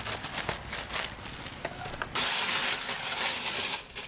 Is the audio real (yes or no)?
yes